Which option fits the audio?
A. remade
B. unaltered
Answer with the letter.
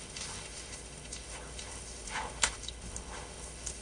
A